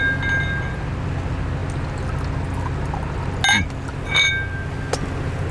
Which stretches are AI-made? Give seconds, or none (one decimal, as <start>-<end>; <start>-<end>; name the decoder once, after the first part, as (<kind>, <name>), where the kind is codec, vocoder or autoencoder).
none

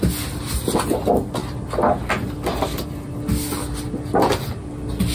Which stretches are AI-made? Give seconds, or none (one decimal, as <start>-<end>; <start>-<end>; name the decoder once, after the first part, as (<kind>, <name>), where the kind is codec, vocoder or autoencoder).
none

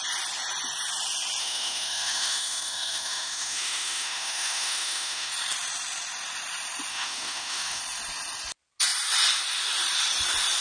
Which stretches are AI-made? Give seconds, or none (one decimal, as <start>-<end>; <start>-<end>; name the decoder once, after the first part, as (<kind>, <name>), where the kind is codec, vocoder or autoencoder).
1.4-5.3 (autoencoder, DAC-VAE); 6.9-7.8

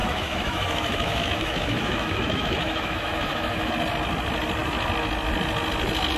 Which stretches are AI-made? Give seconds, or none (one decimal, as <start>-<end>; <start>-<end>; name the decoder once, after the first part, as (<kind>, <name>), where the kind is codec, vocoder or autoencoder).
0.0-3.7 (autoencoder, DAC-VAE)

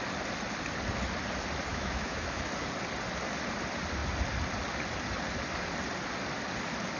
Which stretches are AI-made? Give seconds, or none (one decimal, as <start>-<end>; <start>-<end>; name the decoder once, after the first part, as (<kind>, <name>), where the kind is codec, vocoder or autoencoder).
1.7-2.4 (autoencoder, DAC-VAE)

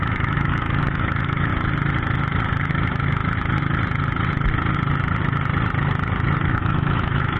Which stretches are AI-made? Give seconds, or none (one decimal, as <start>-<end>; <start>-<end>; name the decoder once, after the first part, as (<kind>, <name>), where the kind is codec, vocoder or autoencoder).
0.0-1.5 (autoencoder, DAC-VAE); 2.7-3.2; 6.4-7.4